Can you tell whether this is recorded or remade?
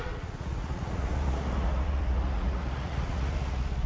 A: remade